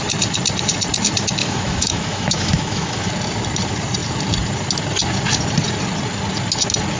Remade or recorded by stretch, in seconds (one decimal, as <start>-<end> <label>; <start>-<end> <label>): 0.0-1.4 recorded; 1.4-3.1 remade; 3.1-7.0 recorded